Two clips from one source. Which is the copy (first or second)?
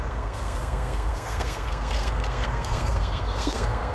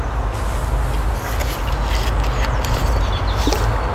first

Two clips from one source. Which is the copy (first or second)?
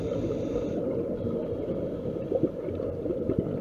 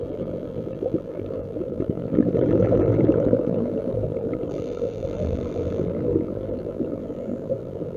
second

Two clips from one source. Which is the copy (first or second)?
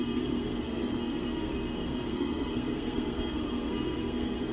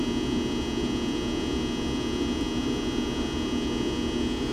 first